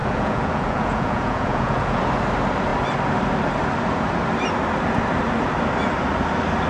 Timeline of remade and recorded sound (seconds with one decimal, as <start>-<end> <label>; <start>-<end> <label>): 0.0-2.0 remade; 2.0-6.7 recorded

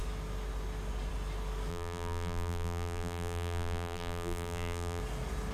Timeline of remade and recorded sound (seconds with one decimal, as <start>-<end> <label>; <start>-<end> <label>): 0.0-1.7 recorded; 1.7-5.0 remade; 5.0-5.5 recorded

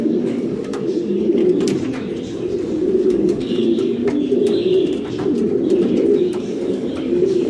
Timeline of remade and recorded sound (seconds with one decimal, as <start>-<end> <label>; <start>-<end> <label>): 0.0-1.4 remade; 1.4-3.0 recorded; 3.0-4.0 remade; 4.0-6.2 recorded; 6.2-7.5 remade

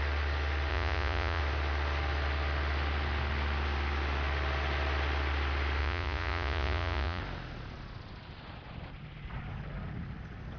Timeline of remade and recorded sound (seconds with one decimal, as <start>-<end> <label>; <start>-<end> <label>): 0.0-0.7 recorded; 0.7-1.4 remade; 1.4-5.8 recorded; 5.8-7.2 remade; 7.2-10.6 recorded

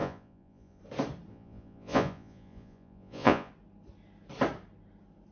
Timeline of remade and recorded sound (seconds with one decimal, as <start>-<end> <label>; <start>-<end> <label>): 0.0-0.8 remade; 0.8-1.3 recorded; 1.3-3.5 remade; 3.5-5.3 recorded

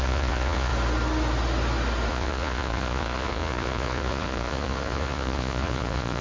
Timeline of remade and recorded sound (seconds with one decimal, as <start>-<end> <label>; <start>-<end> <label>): 0.0-0.7 remade; 0.7-2.1 recorded; 2.1-6.2 remade

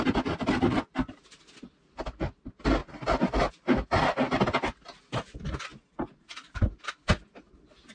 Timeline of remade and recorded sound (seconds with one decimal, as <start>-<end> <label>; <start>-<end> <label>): 0.0-7.9 recorded

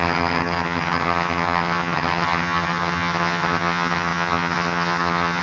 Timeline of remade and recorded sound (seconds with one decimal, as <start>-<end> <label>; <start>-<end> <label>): 0.0-5.4 remade